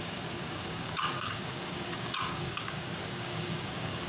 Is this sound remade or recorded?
remade